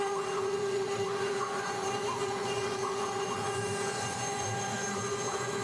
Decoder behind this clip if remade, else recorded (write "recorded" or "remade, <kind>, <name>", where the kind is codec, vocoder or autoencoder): remade, vocoder, Vocos